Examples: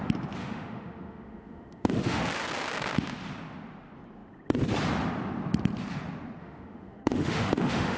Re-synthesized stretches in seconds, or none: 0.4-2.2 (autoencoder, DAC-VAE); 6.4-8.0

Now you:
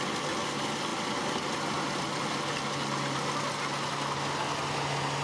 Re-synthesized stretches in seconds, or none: none

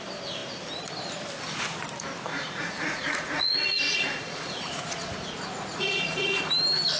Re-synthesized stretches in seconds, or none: 2.3-6.4 (vocoder, Vocos)

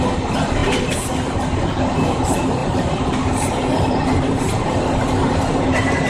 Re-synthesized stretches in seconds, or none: 2.6-6.1 (vocoder, BigVGAN v2)

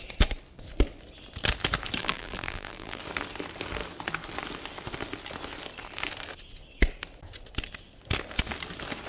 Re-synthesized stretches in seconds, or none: 2.0-3.0 (vocoder, BigVGAN v2)

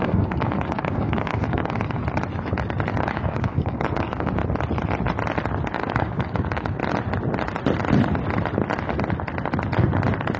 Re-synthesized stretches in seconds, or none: 0.0-2.0 (codec, DAC); 2.9-4.4; 5.7-6.8